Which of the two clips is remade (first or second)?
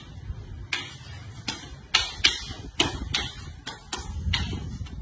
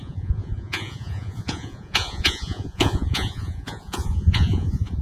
second